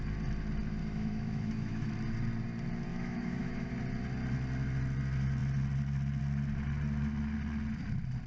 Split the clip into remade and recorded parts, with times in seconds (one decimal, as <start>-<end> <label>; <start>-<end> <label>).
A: 0.0-0.8 recorded; 0.8-1.9 remade; 1.9-2.9 recorded; 2.9-3.7 remade; 3.7-8.3 recorded